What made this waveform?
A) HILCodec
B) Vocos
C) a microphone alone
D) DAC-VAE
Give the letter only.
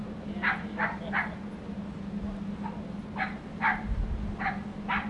C